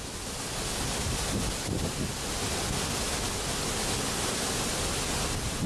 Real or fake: real